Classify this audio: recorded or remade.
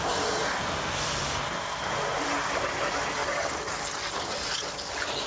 recorded